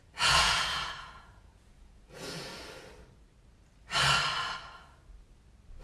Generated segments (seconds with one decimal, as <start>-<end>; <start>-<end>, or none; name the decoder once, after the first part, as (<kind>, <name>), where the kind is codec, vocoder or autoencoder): 0.0-2.5 (vocoder, Vocos)